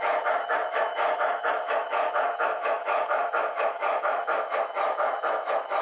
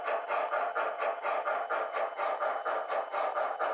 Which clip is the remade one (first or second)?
first